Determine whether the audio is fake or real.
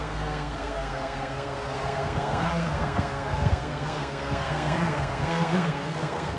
fake